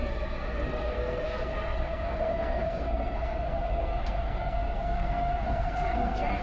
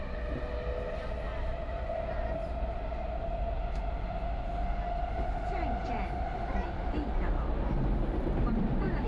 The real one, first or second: second